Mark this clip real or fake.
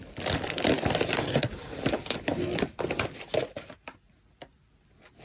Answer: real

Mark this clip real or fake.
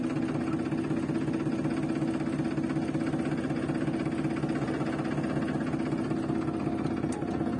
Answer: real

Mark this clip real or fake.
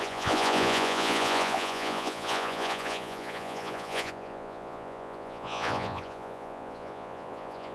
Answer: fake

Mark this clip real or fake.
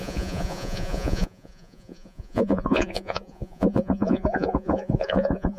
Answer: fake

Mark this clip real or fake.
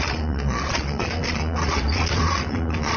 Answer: fake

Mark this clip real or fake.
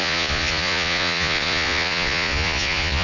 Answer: fake